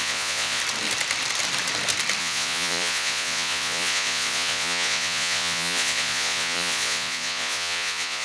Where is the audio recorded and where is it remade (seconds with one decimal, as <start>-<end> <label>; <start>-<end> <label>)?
0.0-0.6 remade; 0.6-2.2 recorded; 2.2-8.2 remade